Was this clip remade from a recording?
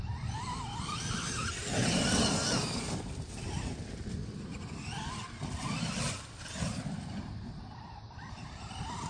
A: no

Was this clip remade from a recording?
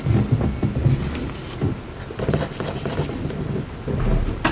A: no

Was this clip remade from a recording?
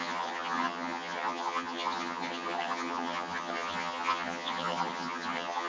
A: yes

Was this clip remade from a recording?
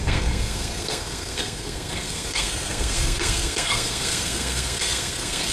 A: yes